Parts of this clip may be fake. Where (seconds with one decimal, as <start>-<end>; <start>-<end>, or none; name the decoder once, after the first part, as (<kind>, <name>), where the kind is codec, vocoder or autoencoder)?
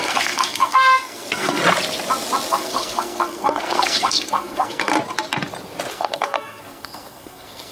0.0-1.6 (codec, SNAC); 2.5-4.9; 5.9-7.7